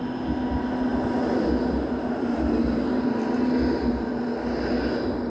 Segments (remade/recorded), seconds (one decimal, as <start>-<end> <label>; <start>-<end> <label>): 0.0-5.3 recorded